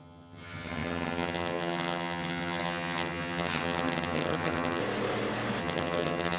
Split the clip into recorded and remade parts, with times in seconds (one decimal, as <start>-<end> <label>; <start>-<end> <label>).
0.0-4.8 remade; 4.8-5.6 recorded; 5.6-6.4 remade